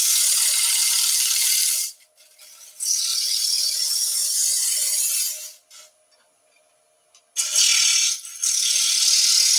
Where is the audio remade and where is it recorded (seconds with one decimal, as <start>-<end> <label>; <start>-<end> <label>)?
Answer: 0.0-0.8 recorded; 0.8-2.0 remade; 2.0-4.2 recorded; 4.2-4.7 remade; 4.7-9.6 recorded